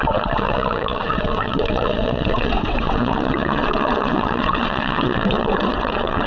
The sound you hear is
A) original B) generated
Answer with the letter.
B